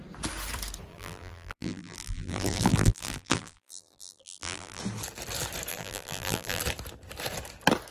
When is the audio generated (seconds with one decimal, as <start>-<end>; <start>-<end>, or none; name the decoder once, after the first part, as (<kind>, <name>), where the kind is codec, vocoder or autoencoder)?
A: 0.9-4.8 (vocoder, BigVGAN v2); 5.7-6.6